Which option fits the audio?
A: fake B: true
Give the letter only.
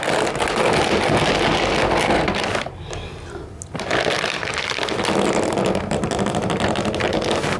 B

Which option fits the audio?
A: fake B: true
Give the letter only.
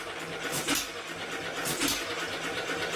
B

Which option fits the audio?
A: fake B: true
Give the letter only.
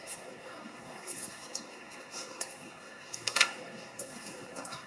A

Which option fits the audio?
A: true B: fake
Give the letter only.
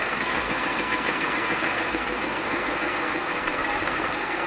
B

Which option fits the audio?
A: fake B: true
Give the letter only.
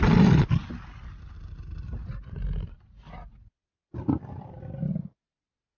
B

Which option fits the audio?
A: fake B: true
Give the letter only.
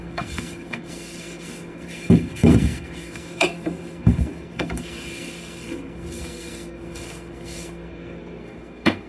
A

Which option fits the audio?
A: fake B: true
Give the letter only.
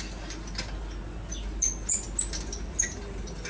B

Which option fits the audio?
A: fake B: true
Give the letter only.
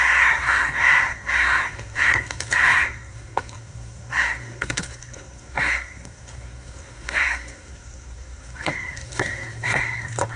A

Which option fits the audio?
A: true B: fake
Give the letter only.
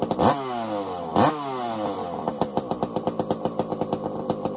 A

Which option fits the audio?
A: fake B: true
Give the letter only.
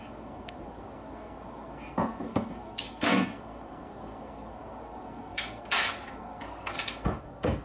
A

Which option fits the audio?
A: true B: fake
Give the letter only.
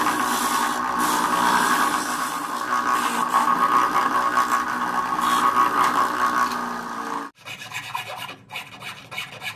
A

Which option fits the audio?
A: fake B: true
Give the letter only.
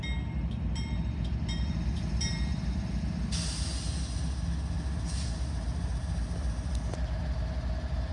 B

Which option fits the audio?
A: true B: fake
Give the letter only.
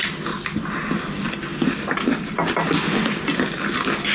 A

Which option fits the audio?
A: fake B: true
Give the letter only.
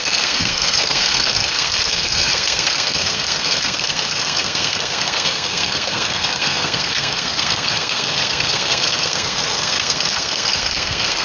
A